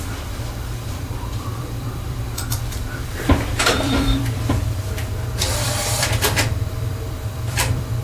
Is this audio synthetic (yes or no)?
yes